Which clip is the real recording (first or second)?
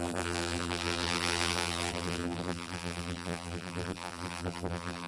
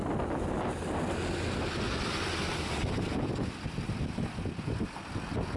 second